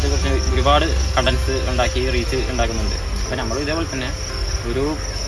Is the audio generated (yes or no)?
no